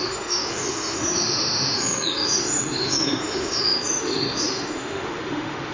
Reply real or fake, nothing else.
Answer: fake